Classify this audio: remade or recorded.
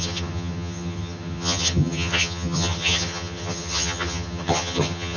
remade